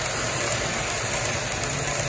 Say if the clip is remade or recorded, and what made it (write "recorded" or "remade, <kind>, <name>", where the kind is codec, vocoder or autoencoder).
recorded